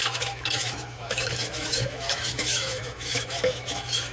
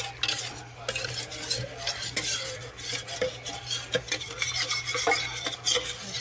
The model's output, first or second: first